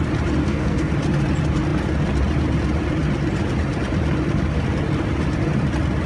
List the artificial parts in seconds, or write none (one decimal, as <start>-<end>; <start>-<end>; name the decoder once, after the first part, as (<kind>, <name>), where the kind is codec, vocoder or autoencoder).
0.4-0.9 (codec, SNAC)